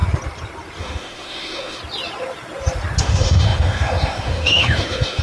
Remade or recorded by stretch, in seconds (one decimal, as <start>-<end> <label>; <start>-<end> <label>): 0.0-0.8 recorded; 0.8-1.8 remade; 1.8-3.0 recorded; 3.0-5.2 remade